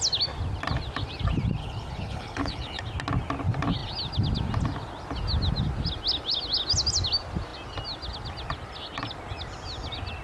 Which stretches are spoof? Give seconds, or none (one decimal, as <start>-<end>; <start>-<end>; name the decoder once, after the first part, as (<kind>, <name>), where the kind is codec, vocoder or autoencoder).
1.6-2.8 (codec, HILCodec)